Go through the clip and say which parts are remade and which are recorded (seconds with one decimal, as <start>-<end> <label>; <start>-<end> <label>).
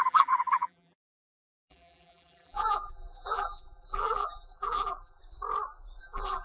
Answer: 0.0-5.2 remade; 5.2-6.0 recorded; 6.0-6.4 remade